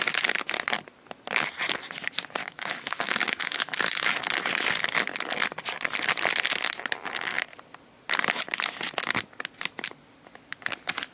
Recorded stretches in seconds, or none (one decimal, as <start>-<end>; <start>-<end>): 0.0-2.4; 4.1-11.1